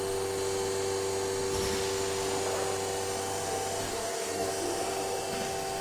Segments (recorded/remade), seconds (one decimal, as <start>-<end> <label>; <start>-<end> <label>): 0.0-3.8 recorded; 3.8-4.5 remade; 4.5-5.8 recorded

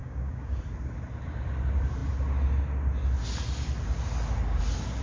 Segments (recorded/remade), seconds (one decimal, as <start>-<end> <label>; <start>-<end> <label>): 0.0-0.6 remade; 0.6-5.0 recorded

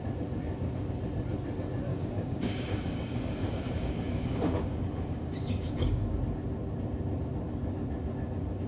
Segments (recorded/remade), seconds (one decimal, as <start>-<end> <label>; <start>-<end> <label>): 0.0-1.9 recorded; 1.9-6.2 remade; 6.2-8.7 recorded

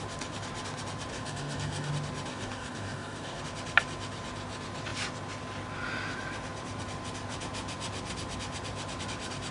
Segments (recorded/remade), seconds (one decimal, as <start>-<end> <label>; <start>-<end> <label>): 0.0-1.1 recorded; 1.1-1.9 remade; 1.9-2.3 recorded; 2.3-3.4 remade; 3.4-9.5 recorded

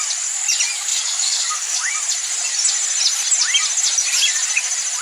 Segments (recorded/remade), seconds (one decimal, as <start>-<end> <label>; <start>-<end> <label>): 0.0-0.9 recorded; 0.9-1.9 remade; 1.9-5.0 recorded

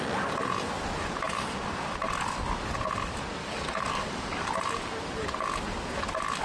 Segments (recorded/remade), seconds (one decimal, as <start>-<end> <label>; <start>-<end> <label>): 0.0-3.4 recorded; 3.4-4.5 remade; 4.5-6.4 recorded